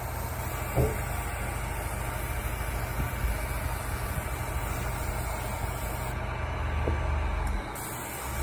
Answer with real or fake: real